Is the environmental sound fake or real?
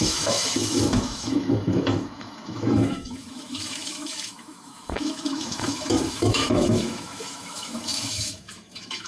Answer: fake